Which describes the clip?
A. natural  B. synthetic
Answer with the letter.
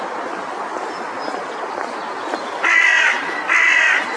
A